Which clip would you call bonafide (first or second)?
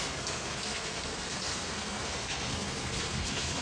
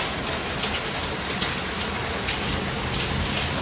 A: second